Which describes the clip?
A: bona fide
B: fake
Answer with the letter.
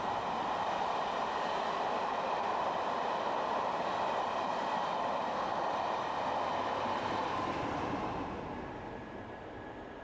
B